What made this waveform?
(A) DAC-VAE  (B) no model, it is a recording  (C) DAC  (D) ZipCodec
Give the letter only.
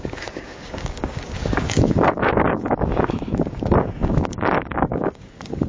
C